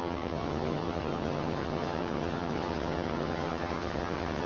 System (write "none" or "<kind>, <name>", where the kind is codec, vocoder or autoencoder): vocoder, HiFi-GAN